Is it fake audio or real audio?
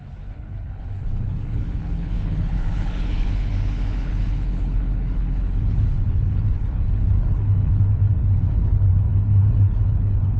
fake